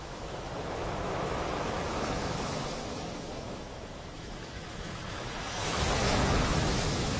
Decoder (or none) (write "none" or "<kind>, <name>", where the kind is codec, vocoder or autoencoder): autoencoder, DAC-VAE